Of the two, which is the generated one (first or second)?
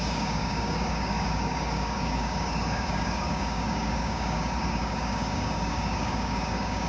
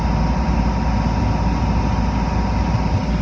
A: first